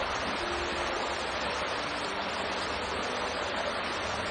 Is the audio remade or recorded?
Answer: recorded